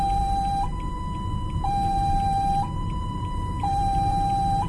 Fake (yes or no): yes